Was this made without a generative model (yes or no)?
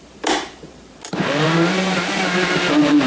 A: no